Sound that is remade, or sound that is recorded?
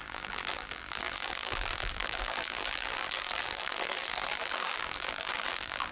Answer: remade